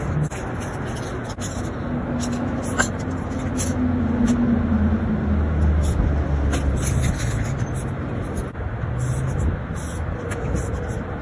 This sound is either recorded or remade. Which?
recorded